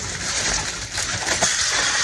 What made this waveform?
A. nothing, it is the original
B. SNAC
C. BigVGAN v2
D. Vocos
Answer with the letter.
C